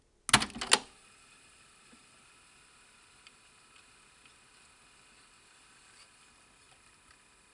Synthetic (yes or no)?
no